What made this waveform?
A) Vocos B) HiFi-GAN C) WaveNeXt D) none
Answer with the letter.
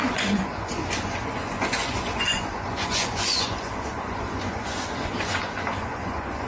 A